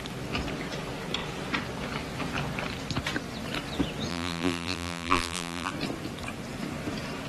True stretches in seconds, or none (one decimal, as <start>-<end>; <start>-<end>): 0.0-4.1; 5.7-7.3